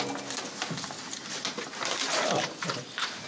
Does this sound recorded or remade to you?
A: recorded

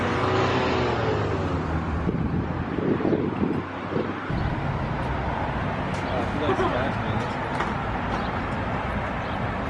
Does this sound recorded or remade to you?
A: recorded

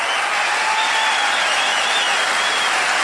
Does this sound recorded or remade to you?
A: recorded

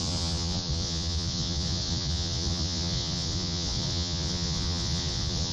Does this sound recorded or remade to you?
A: remade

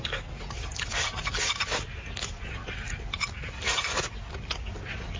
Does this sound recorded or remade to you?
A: recorded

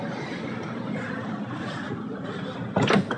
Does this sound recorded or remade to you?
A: recorded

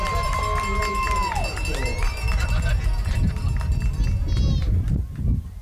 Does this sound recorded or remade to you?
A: recorded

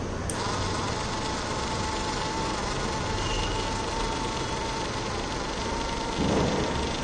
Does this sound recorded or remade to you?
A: recorded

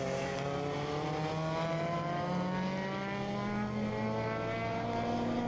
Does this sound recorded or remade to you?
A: recorded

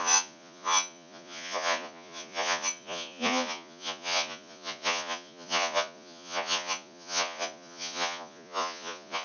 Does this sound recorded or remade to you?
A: remade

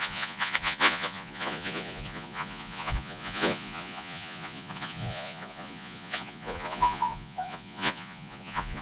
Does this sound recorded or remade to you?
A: remade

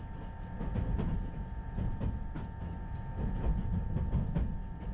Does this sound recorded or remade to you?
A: recorded